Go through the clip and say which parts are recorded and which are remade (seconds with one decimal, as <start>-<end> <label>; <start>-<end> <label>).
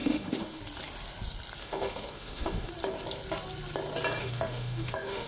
0.0-0.6 remade; 0.6-1.6 recorded; 1.6-2.7 remade; 2.7-4.2 recorded; 4.2-5.3 remade